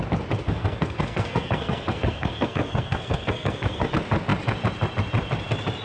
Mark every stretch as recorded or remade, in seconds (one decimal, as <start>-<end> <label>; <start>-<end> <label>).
0.0-0.4 recorded; 0.4-3.9 remade; 3.9-5.8 recorded